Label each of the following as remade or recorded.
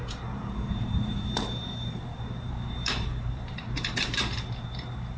remade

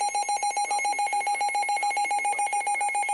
recorded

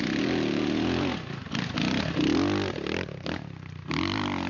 recorded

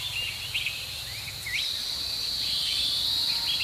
recorded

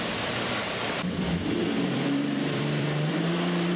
remade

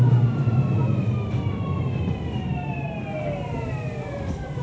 recorded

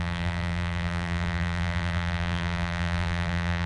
remade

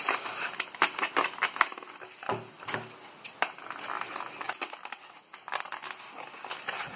recorded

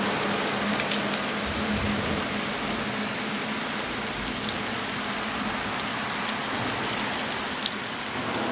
recorded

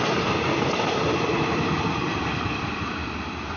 remade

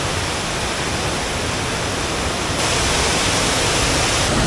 recorded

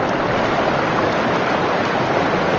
recorded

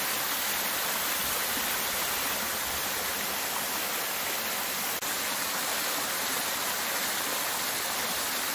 recorded